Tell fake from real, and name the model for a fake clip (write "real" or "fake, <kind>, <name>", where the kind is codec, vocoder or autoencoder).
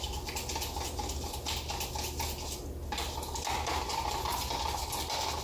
real